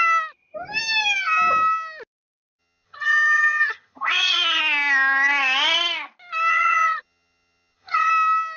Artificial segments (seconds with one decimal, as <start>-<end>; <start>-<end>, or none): 2.6-4.6; 6.5-8.1